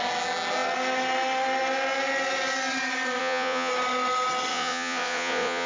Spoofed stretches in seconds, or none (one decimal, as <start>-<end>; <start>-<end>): 3.2-3.7; 4.5-5.7